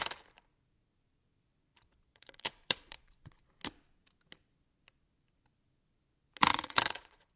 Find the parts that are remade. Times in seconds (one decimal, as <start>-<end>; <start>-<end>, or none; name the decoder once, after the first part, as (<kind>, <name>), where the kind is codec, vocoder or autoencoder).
1.7-3.5 (vocoder, Vocos); 6.5-7.4